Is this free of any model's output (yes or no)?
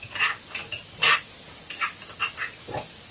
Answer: yes